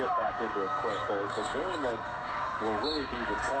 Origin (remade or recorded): remade